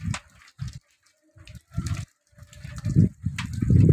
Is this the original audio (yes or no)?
yes